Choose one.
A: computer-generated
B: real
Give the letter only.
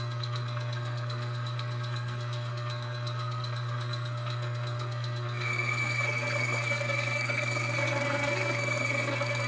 A